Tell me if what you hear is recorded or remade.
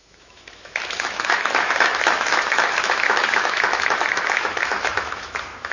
remade